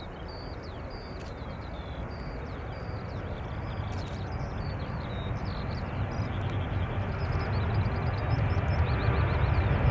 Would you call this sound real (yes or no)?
yes